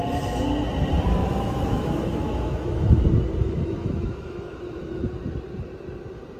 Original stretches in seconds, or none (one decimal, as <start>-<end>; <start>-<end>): 0.0-1.2; 3.0-3.4; 5.0-6.4